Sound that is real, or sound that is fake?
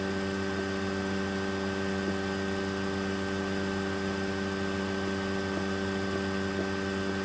real